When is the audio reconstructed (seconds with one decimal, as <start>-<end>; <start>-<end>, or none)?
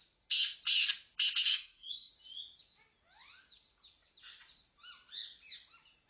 1.5-2.1